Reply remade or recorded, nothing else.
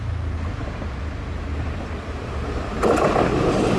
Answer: remade